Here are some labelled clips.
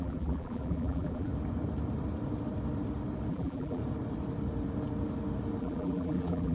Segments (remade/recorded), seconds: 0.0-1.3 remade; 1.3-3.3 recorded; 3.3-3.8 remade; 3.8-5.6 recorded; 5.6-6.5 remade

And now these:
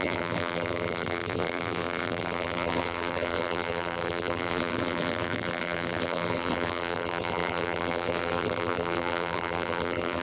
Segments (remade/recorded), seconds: 0.0-10.2 remade

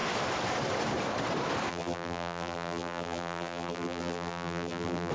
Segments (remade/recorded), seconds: 0.0-1.7 recorded; 1.7-5.1 remade